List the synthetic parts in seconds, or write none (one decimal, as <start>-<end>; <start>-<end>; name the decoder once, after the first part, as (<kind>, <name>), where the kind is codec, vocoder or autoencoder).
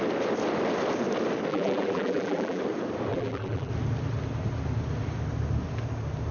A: 1.5-2.6 (vocoder, BigVGAN v2); 3.1-3.7